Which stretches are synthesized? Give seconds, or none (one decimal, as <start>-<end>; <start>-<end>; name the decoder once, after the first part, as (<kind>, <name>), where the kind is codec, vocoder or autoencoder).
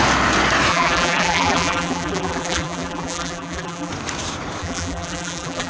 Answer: 0.7-3.9 (vocoder, BigVGAN v2); 4.6-5.7